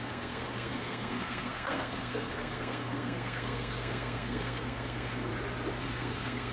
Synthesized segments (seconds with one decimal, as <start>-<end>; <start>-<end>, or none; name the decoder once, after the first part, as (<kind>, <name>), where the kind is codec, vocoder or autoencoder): 0.0-5.3 (codec, SNAC); 5.8-6.5